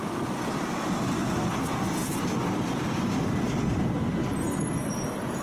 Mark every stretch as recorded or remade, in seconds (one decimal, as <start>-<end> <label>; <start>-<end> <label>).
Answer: 0.0-2.0 recorded; 2.0-3.9 remade; 3.9-5.4 recorded